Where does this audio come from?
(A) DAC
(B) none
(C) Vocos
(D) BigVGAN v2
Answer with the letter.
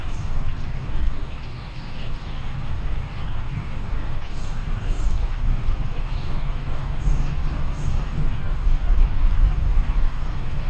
A